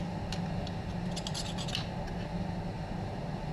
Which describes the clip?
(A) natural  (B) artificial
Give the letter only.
A